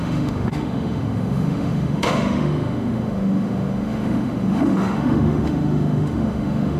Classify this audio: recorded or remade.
remade